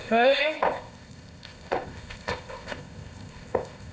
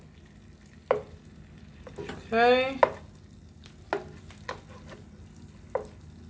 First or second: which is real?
second